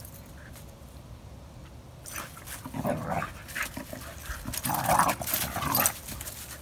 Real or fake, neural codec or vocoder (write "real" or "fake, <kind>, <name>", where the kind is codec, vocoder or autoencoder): real